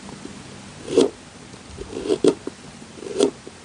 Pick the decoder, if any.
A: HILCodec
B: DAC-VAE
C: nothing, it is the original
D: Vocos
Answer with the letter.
C